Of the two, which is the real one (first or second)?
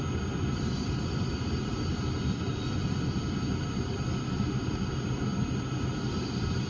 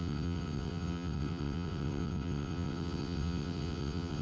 first